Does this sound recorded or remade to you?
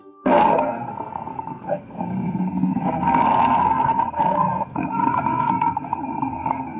remade